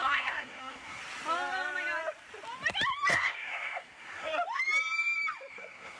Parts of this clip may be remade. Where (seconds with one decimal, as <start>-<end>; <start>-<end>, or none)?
0.0-1.0; 3.1-4.3; 5.5-6.0